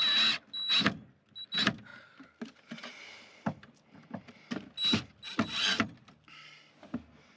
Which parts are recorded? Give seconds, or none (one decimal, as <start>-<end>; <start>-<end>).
0.0-7.4